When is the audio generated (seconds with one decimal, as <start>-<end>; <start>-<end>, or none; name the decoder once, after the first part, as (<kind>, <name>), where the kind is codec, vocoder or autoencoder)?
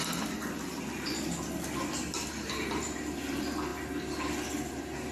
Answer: none